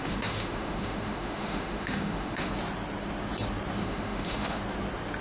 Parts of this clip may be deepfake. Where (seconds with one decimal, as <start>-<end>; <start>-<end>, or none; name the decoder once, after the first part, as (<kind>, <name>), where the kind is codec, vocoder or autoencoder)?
0.0-2.5 (autoencoder, DAC-VAE); 3.8-4.6